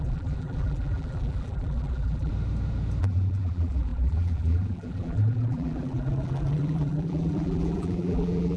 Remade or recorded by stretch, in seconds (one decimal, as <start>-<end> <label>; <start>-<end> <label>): 0.0-2.3 remade; 2.3-3.0 recorded; 3.0-8.6 remade